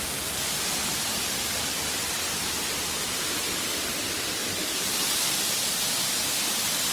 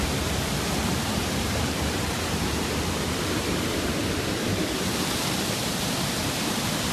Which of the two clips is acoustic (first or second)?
first